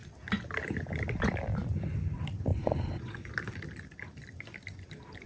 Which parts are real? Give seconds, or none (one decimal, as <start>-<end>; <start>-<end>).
0.0-2.5; 3.3-5.3